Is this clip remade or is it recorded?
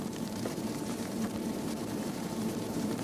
remade